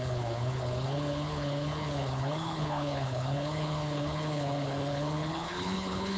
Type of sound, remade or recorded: remade